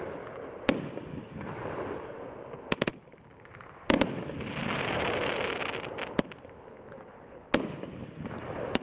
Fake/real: real